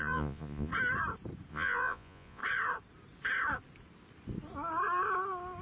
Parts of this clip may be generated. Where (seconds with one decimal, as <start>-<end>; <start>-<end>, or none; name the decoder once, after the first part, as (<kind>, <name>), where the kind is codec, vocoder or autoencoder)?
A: 0.0-0.7 (vocoder, Vocos); 1.5-2.4